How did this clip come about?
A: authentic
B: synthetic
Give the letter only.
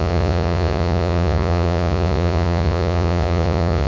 B